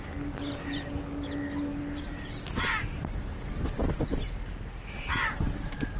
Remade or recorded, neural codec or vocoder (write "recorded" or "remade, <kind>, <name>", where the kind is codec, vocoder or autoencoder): recorded